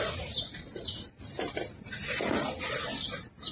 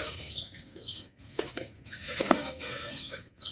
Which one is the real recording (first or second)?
first